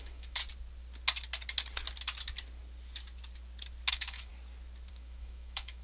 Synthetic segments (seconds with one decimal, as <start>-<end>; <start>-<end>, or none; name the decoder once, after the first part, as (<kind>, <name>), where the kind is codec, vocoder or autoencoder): 0.0-0.4 (autoencoder, DAC-VAE); 3.9-4.3; 4.9-5.8